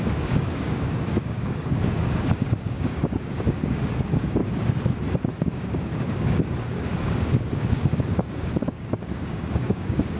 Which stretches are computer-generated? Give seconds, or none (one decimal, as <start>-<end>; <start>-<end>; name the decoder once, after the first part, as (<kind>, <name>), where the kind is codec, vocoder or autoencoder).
0.0-4.4 (codec, DAC); 5.5-10.2